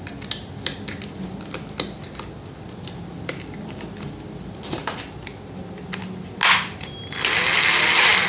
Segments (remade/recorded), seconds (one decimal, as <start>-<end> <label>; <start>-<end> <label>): 0.0-4.8 recorded; 4.8-5.6 remade; 5.6-8.3 recorded